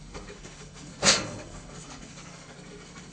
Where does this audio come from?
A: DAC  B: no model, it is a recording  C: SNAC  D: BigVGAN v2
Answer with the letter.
C